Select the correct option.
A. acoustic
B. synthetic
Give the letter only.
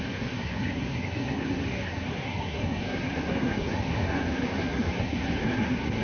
B